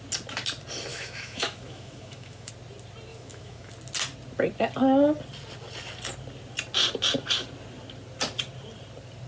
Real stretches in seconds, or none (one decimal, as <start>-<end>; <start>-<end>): 0.0-0.9; 2.5-3.1; 3.7-9.3